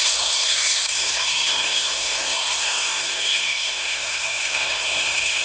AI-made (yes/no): yes